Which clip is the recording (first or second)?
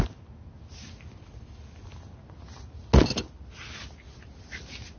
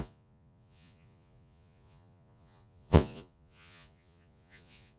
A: first